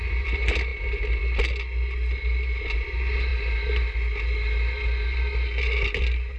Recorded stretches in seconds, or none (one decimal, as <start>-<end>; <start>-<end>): 0.0-6.4